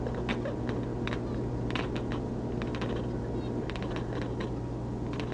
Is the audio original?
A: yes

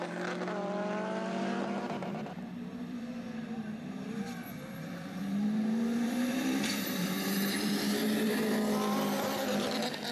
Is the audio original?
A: no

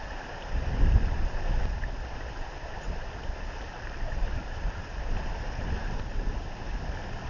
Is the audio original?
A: yes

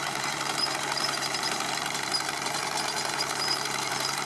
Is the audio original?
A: no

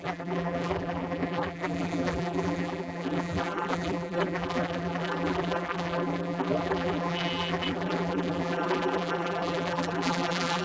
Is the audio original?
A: no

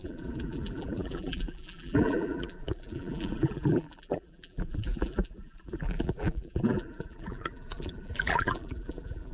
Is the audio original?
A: no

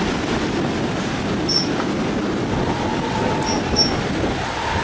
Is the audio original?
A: yes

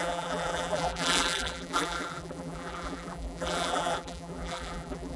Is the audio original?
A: no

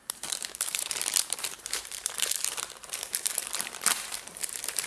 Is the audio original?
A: no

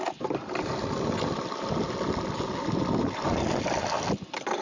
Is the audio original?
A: yes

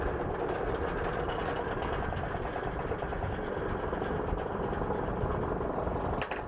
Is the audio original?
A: yes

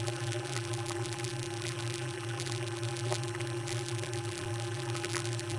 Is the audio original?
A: no